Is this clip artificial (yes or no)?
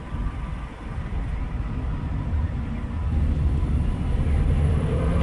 yes